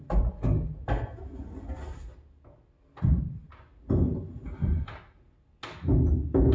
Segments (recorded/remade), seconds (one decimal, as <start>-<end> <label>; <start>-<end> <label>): 0.0-6.5 recorded